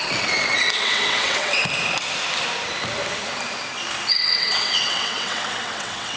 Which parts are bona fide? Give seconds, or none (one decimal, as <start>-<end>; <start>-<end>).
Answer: 1.6-4.1